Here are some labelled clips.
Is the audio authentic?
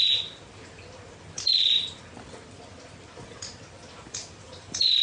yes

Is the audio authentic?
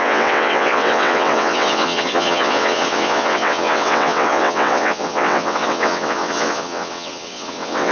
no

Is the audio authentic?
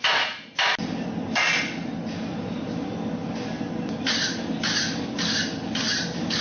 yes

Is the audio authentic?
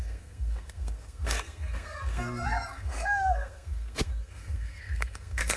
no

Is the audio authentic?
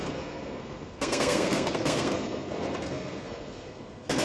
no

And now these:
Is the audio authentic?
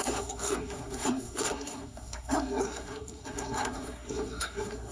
no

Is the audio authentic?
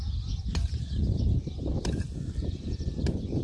yes